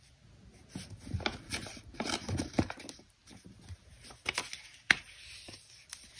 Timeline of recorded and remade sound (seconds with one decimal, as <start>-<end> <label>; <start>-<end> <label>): 0.0-6.2 recorded